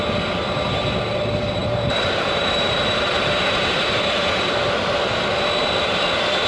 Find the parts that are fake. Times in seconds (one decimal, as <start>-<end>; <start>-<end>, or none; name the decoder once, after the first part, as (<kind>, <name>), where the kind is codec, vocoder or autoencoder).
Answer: 1.6-4.4 (vocoder, BigVGAN v2)

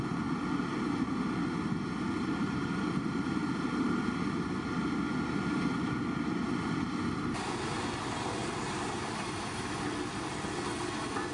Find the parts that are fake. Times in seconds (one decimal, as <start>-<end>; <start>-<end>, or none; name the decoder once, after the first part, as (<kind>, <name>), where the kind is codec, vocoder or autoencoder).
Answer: 2.4-3.5 (vocoder, BigVGAN v2); 8.4-9.8

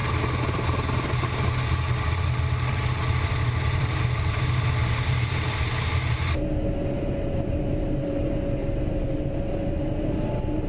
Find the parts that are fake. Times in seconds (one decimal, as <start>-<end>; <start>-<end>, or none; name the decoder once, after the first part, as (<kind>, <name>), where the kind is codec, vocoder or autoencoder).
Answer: 3.1-10.7 (vocoder, BigVGAN v2)